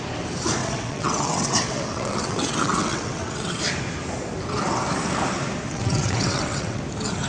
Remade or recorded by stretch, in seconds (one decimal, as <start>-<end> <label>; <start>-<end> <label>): 0.0-0.6 recorded; 0.6-3.6 remade; 3.6-5.7 recorded; 5.7-6.8 remade; 6.8-7.3 recorded